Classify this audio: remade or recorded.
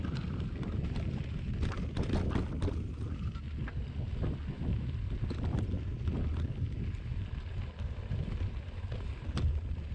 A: recorded